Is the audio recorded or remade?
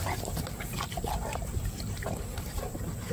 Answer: recorded